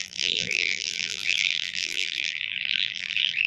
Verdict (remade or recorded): remade